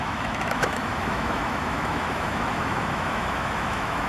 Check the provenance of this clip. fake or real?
fake